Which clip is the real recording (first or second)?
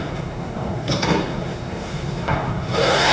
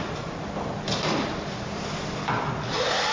second